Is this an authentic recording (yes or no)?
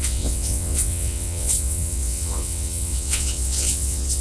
no